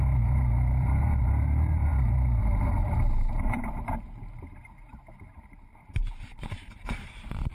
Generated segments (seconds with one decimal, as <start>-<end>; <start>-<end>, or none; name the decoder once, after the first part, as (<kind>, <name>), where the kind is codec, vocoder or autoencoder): 0.0-7.5 (vocoder, BigVGAN v2)